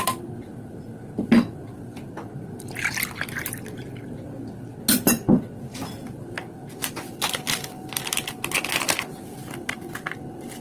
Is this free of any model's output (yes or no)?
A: yes